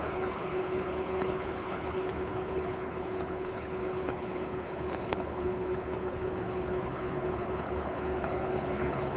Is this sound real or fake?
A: fake